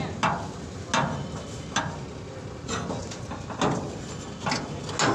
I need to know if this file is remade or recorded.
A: recorded